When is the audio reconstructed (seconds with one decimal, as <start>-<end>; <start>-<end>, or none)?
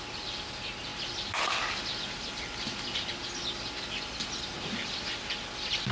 none